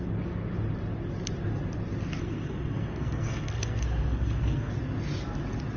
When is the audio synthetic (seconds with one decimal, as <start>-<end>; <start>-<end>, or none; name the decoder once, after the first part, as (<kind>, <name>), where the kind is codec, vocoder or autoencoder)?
2.2-4.7 (codec, SNAC)

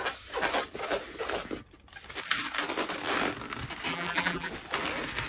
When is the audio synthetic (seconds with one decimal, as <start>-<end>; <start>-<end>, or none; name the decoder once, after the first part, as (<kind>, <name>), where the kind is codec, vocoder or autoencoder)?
3.9-4.5 (vocoder, BigVGAN v2)

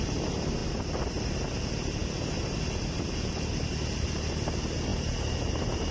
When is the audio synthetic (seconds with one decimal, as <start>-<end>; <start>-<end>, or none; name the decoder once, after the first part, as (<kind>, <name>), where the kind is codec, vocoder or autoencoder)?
none

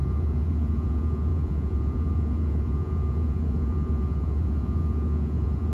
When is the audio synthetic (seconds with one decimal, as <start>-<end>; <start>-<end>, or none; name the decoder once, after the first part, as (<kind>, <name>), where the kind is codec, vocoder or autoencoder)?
0.0-5.7 (vocoder, Vocos)

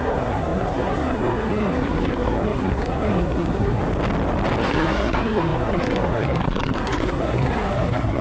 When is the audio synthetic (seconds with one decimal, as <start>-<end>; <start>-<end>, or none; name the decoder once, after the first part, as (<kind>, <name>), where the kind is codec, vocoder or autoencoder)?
0.0-3.8 (codec, SNAC); 4.6-8.2

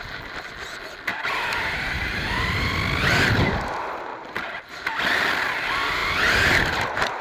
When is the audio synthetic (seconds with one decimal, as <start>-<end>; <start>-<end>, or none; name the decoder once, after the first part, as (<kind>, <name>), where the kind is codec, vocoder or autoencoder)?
1.1-2.4 (vocoder, BigVGAN v2); 4.1-4.9; 6.0-7.2

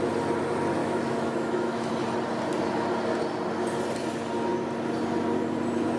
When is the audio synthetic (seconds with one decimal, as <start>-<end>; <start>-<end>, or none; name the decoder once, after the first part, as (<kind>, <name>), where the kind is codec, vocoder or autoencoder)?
0.8-1.9 (autoencoder, DAC-VAE)